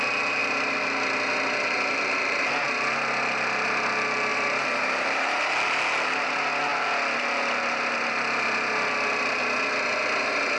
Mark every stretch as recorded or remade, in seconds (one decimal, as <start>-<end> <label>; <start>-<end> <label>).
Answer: 0.0-4.3 recorded; 4.3-5.4 remade; 5.4-10.6 recorded